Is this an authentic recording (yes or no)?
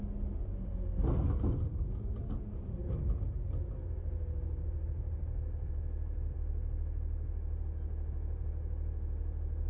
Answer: yes